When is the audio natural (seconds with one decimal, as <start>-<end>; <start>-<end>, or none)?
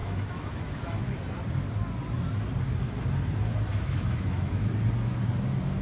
1.0-3.7; 4.7-5.8